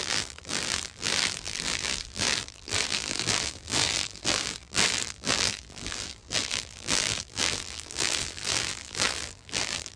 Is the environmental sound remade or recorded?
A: remade